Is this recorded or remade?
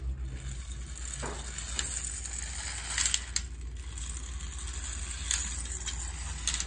recorded